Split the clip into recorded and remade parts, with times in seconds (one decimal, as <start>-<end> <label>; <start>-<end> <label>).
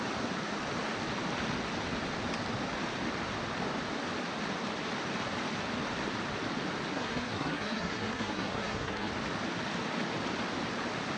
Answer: 0.0-6.9 recorded; 6.9-9.1 remade; 9.1-11.2 recorded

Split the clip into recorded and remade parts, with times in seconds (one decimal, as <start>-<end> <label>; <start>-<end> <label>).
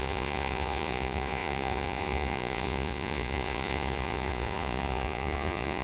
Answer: 0.0-5.8 remade